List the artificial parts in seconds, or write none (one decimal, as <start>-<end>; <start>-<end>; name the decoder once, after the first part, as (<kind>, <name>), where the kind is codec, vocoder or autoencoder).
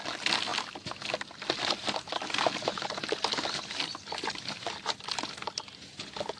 none